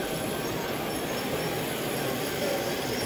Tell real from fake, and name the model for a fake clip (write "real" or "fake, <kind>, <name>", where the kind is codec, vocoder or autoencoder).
fake, vocoder, BigVGAN v2